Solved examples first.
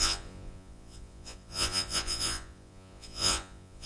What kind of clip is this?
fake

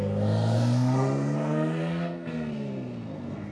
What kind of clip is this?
fake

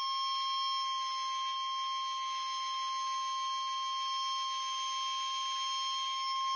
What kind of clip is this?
real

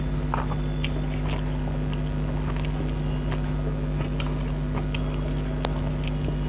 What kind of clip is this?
real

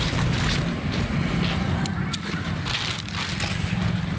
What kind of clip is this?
real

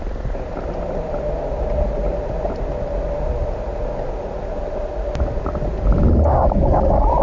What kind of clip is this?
real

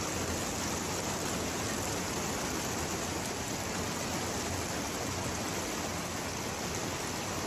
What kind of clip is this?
real